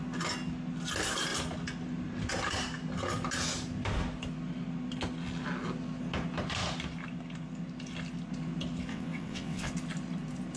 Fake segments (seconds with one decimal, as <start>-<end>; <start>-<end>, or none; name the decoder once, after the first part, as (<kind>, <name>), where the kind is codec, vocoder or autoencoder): 8.9-9.7 (vocoder, WaveNeXt)